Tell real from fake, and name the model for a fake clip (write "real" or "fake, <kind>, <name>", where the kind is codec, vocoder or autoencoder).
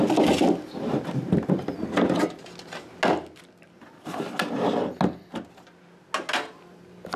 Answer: real